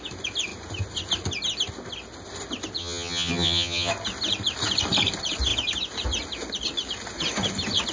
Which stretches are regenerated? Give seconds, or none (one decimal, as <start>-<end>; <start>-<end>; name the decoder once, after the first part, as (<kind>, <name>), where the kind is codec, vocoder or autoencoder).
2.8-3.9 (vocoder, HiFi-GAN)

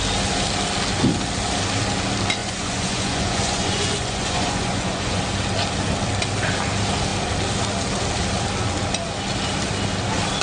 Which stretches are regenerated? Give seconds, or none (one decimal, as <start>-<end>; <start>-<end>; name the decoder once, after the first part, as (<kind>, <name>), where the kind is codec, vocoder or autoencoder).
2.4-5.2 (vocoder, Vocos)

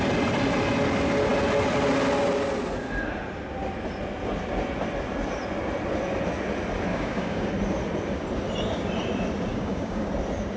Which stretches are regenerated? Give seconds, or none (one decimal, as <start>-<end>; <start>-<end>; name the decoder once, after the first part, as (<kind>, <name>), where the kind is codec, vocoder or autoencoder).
6.9-7.5 (codec, DAC); 9.5-10.1